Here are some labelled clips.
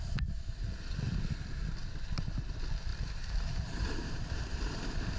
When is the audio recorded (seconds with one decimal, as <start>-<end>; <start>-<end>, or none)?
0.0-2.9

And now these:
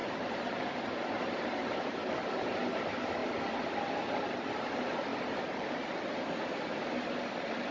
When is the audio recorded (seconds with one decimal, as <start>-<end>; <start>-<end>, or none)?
2.0-5.1; 6.8-7.7

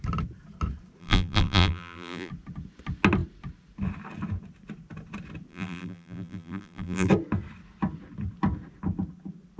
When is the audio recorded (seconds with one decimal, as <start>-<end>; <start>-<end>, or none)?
0.0-1.0; 2.3-5.5; 7.1-9.6

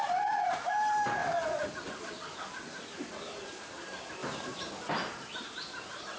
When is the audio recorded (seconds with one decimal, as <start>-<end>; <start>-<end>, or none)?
4.2-4.9

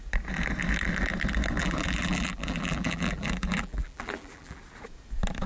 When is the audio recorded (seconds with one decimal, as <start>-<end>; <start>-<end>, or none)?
0.0-1.6; 4.6-5.5

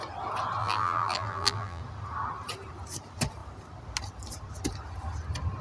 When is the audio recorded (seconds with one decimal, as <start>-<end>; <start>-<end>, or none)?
0.0-0.6; 1.8-5.6